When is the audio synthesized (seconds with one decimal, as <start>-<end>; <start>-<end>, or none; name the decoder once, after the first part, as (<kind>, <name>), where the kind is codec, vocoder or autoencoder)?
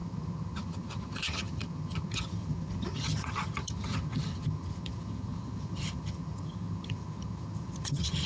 0.0-8.3 (vocoder, HiFi-GAN)